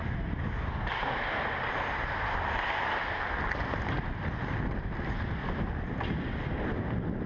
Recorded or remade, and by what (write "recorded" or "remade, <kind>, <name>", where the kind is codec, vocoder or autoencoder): recorded